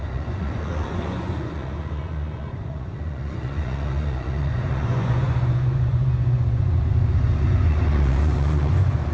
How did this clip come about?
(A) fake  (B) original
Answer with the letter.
A